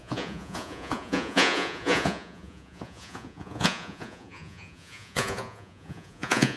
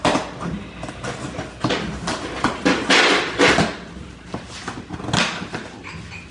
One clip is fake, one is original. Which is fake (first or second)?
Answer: first